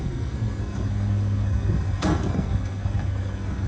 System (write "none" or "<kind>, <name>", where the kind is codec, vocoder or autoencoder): codec, SNAC